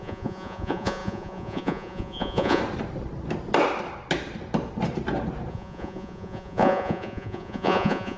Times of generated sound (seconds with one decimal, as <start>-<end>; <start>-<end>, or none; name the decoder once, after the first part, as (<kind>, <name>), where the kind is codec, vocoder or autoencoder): 0.0-2.6 (vocoder, Vocos); 5.5-8.2